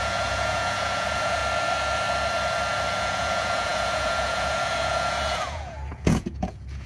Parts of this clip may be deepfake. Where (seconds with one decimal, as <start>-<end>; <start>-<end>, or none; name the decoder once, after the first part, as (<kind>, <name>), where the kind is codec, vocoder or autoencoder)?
0.0-1.4 (vocoder, Vocos); 3.0-6.9